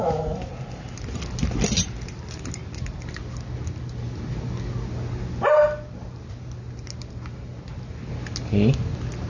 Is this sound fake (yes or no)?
no